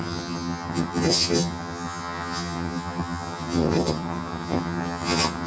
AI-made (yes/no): yes